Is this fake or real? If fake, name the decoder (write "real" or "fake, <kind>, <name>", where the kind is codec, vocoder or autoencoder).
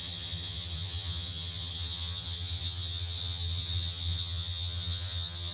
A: fake, vocoder, HiFi-GAN